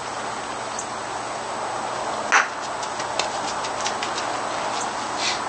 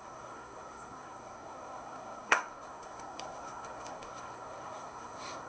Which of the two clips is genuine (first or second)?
first